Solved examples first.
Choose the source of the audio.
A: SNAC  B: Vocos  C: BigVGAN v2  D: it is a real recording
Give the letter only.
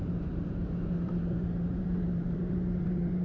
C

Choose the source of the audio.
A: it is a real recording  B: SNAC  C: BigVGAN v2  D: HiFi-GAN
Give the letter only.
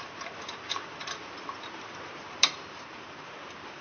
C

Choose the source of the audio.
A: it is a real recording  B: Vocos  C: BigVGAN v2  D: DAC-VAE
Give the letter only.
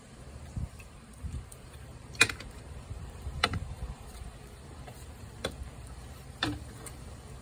C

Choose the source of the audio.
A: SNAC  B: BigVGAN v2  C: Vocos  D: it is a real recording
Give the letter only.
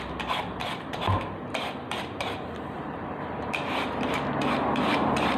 B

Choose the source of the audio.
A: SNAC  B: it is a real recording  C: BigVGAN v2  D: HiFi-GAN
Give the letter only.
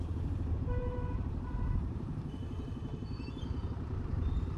C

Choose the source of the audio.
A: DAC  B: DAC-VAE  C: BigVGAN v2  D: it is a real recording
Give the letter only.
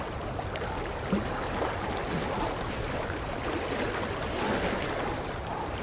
D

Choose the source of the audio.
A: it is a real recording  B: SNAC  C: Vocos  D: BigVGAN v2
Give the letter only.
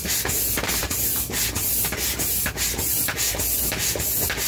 A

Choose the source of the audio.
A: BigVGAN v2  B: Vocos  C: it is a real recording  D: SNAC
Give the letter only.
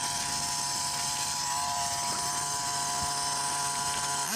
C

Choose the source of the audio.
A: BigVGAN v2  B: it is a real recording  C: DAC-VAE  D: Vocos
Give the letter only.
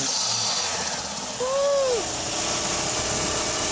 B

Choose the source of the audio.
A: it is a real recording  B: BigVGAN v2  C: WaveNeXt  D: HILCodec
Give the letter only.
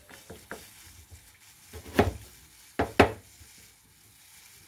A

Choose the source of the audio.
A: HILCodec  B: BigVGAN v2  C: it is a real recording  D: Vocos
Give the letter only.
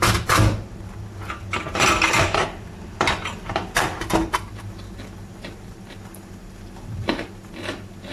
B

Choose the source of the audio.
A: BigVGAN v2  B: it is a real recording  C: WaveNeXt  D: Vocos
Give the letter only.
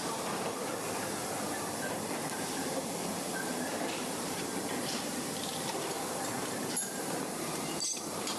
A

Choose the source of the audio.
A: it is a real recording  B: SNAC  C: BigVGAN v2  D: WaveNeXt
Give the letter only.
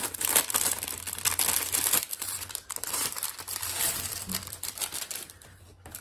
C